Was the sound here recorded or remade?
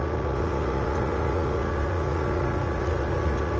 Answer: remade